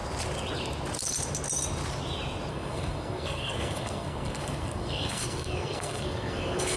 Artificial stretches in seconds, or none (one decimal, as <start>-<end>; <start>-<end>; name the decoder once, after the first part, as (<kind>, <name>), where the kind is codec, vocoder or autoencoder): 2.5-6.8 (codec, SNAC)